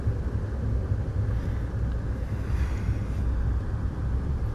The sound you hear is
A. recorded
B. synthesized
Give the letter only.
A